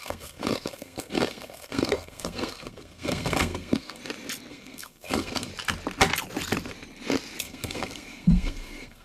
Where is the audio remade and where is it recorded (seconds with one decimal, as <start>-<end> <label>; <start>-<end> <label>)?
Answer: 0.0-4.0 remade; 4.0-4.5 recorded; 4.5-5.5 remade; 5.5-7.4 recorded; 7.4-9.0 remade